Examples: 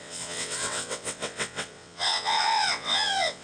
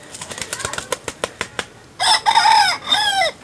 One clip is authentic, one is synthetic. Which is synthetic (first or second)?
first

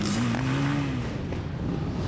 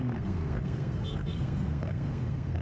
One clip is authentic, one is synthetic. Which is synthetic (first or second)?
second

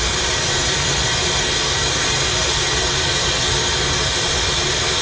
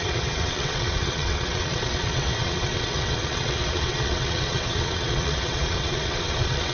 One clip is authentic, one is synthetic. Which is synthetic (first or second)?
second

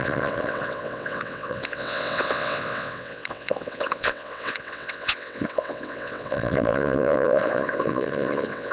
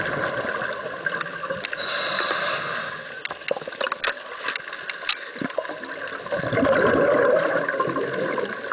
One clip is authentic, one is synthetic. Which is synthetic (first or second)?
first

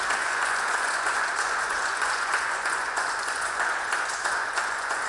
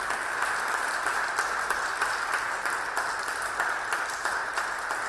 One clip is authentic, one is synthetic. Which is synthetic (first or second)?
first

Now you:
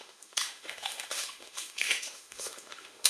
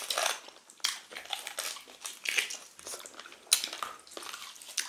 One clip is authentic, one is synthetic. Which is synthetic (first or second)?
first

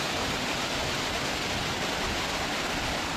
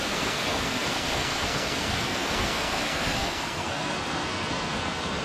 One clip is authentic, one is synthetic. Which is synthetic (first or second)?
second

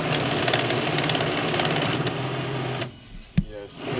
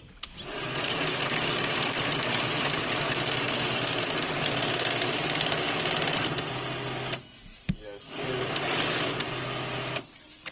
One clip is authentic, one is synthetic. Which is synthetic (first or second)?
first